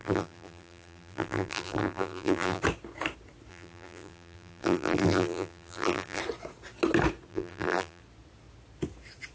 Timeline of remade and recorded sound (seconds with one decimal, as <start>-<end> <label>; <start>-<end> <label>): 0.0-2.6 remade; 2.6-3.5 recorded; 3.5-6.2 remade; 6.2-7.3 recorded; 7.3-8.0 remade; 8.0-9.3 recorded